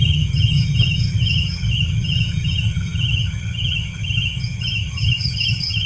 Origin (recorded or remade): remade